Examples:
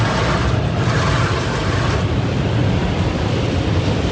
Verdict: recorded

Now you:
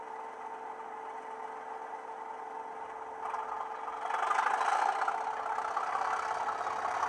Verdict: recorded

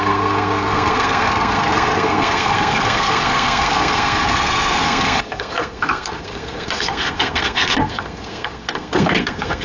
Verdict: remade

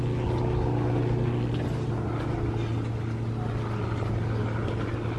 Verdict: recorded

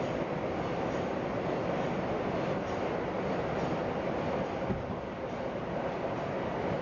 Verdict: recorded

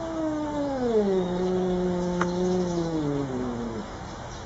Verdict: remade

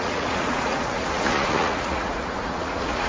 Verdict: remade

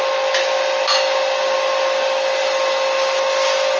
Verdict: recorded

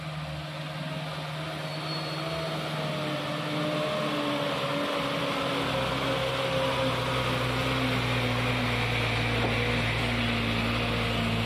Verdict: recorded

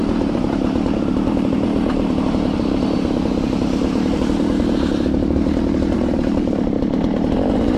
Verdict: remade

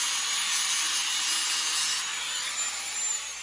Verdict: recorded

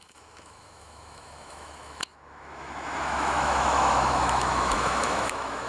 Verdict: remade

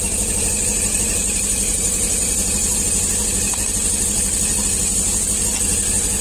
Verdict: recorded